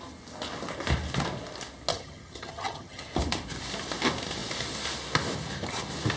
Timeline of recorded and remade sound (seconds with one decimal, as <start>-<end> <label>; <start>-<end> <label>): 0.0-1.9 recorded; 1.9-3.0 remade; 3.0-6.2 recorded